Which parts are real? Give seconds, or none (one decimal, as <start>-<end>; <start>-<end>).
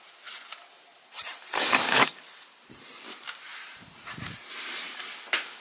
0.0-0.9; 2.1-3.5; 4.7-5.6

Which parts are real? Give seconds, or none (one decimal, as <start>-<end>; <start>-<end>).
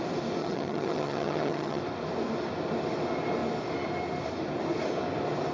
0.0-0.4; 1.8-5.5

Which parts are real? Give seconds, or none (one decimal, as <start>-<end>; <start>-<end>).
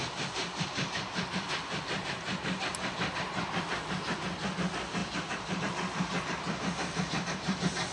0.0-7.9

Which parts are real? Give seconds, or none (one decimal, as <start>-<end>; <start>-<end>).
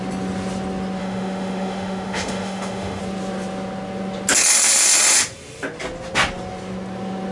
0.0-1.0; 3.0-7.3